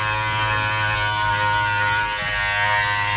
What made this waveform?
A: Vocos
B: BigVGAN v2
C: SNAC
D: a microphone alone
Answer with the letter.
D